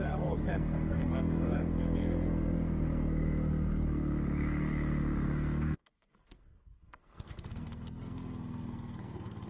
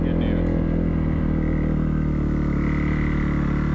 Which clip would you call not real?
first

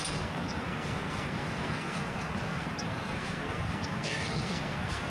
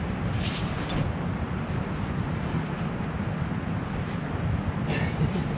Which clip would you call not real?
first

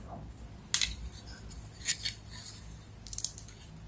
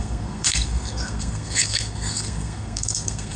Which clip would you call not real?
second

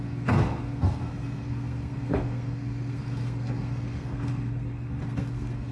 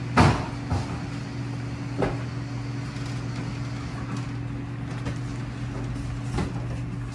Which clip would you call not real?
first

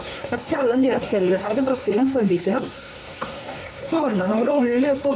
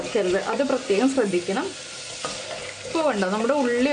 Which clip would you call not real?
first